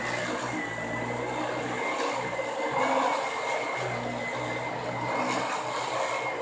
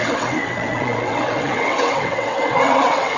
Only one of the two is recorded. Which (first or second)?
first